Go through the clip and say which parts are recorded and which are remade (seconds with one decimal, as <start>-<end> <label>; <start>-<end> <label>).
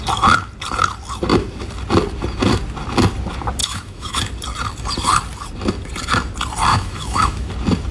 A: 0.0-3.6 recorded; 3.6-4.2 remade; 4.2-6.7 recorded; 6.7-7.5 remade; 7.5-7.9 recorded